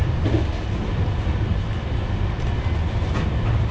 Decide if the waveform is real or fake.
real